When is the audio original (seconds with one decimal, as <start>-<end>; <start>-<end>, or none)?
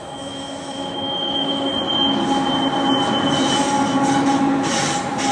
1.7-5.3